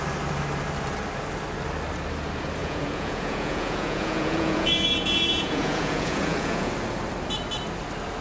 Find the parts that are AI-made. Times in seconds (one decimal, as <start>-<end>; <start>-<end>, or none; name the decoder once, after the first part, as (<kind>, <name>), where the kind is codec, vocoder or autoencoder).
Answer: 2.6-6.7 (vocoder, Vocos)